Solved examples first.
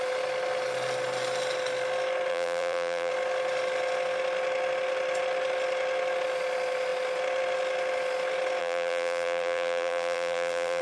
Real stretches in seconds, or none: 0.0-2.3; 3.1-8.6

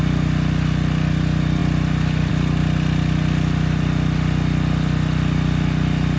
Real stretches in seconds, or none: 0.0-6.2

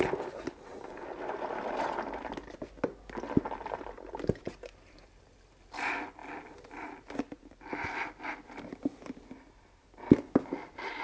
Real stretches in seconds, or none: 0.0-11.0

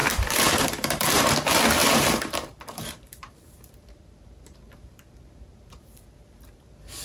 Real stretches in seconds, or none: 1.3-1.8; 6.0-7.0